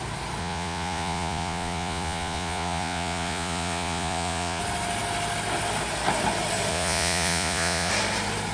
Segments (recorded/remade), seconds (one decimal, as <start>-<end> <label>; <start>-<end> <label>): 0.0-0.4 recorded; 0.4-4.6 remade; 4.6-6.7 recorded; 6.7-7.9 remade; 7.9-8.5 recorded